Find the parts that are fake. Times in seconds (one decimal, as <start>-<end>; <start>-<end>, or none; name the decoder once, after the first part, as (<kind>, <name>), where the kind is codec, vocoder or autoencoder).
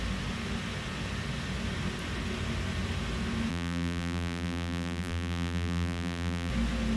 3.5-6.5 (vocoder, BigVGAN v2)